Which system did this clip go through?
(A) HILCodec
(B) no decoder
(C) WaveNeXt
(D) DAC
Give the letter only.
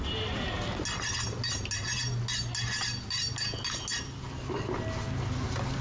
B